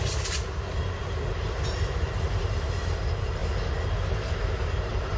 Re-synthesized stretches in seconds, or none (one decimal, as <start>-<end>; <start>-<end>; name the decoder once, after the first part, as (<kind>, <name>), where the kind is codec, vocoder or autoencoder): 0.0-3.4 (vocoder, BigVGAN v2); 4.1-5.2

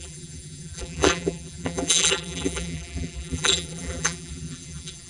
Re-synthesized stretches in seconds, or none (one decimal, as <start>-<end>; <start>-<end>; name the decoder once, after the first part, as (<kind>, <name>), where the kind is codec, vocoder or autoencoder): 0.0-5.1 (vocoder, BigVGAN v2)

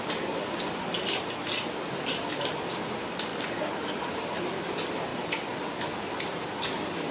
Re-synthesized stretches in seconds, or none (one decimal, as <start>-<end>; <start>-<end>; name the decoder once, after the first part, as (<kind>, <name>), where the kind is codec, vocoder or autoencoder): 0.0-3.3 (vocoder, BigVGAN v2); 4.3-5.1; 5.9-7.1

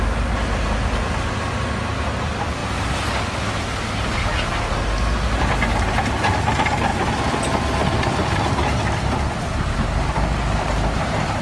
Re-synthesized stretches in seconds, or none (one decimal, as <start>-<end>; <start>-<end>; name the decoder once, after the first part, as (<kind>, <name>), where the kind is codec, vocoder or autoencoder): 6.9-11.0 (vocoder, BigVGAN v2)

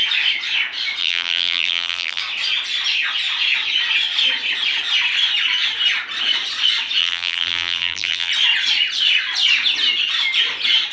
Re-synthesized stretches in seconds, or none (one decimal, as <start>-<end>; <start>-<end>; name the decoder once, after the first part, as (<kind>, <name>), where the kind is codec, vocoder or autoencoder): 1.0-2.2 (vocoder, BigVGAN v2); 7.0-8.3